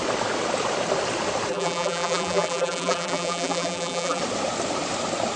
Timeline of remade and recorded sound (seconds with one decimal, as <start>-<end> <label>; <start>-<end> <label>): 0.0-1.5 recorded; 1.5-4.2 remade; 4.2-5.4 recorded